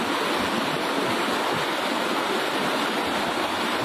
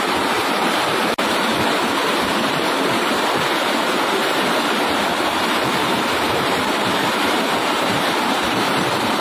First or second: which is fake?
second